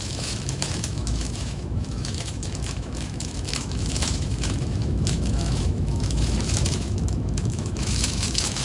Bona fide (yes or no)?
no